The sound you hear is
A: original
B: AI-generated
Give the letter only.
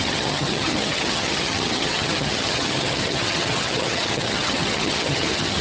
B